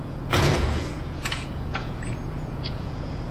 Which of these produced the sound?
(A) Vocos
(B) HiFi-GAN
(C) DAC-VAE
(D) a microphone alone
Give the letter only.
A